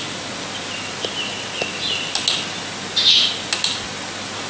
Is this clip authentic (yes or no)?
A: yes